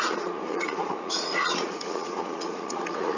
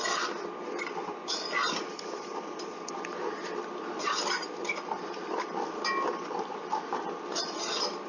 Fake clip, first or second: first